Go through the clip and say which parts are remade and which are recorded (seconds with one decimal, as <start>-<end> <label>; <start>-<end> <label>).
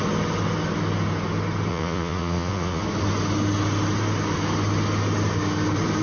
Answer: 0.0-1.7 recorded; 1.7-2.8 remade; 2.8-6.0 recorded